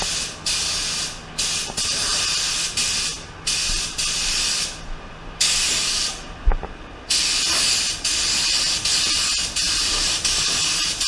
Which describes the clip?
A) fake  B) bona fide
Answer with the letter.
B